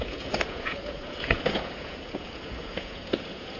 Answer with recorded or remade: remade